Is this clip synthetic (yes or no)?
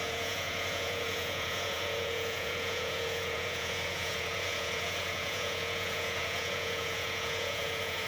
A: yes